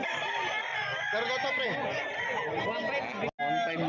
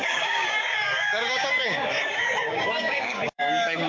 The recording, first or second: first